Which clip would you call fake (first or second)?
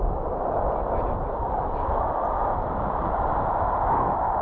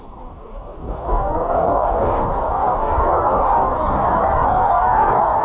second